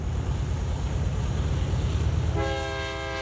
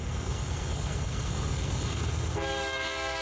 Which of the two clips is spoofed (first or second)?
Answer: second